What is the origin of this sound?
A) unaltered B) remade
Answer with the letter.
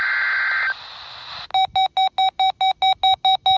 A